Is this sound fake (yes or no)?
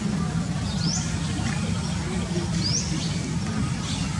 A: no